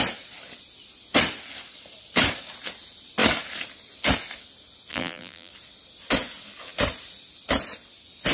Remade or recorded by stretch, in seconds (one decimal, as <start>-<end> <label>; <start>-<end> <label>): 0.0-4.9 recorded; 4.9-5.5 remade; 5.5-8.3 recorded